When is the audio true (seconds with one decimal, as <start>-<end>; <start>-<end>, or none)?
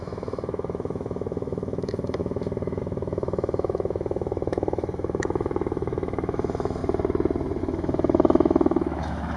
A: 6.8-7.6